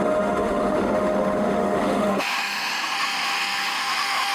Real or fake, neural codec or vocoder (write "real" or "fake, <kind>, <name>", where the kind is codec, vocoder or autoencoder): fake, autoencoder, DAC-VAE